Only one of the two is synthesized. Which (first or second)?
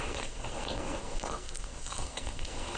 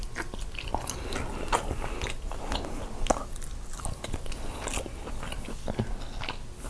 first